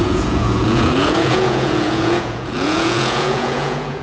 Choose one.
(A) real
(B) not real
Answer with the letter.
B